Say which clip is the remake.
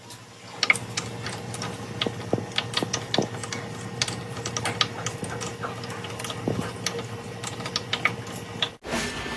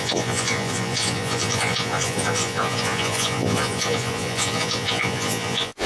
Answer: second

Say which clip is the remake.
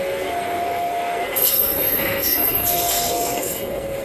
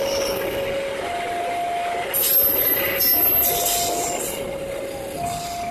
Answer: first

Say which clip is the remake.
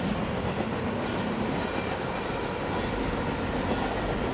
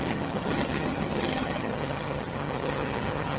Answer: second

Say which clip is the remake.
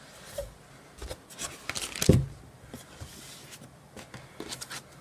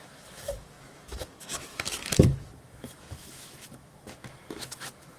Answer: second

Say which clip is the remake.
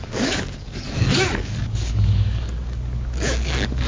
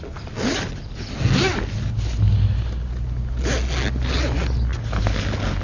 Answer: first